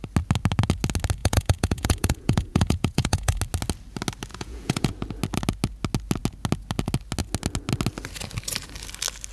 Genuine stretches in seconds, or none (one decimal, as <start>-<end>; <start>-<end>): 0.0-1.2; 3.4-4.3; 4.9-9.3